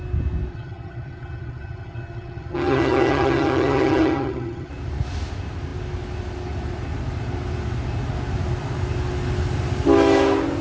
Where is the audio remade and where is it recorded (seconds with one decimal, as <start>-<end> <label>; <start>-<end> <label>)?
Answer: 0.0-0.5 recorded; 0.5-4.7 remade; 4.7-10.6 recorded